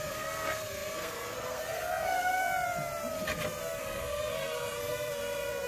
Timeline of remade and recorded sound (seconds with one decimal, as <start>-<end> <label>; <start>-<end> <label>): 0.0-2.5 remade; 2.5-3.8 recorded; 3.8-5.7 remade